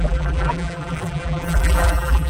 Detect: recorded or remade remade